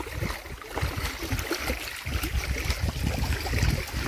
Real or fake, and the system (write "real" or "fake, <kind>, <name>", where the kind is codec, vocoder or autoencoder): real